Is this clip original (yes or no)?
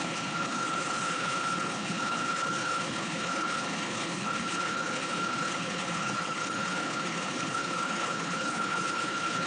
no